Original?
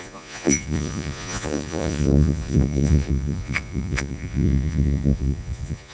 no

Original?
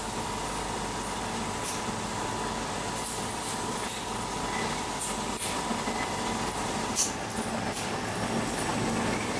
yes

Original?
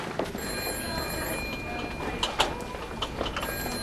yes